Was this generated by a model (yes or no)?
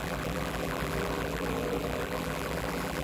yes